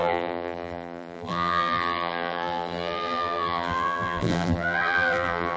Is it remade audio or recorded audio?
remade